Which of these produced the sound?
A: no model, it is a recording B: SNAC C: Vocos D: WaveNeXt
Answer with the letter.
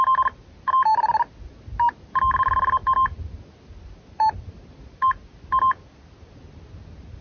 A